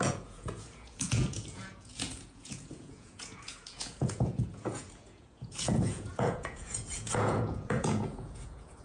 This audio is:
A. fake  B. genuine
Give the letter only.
A